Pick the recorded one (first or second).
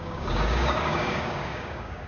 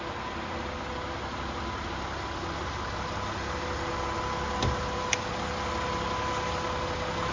second